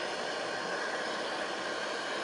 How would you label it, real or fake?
real